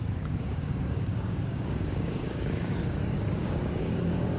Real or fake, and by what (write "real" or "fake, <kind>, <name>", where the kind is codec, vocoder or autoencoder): fake, codec, DAC